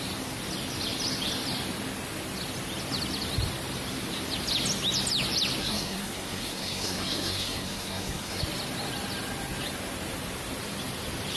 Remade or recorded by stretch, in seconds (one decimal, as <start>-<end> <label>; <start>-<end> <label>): 0.0-5.6 recorded; 5.6-8.4 remade; 8.4-11.4 recorded